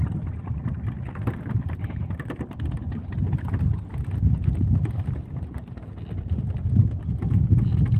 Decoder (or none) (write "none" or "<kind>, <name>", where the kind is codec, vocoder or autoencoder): none